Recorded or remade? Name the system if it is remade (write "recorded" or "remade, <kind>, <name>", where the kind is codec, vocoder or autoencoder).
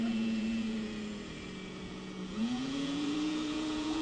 remade, vocoder, Vocos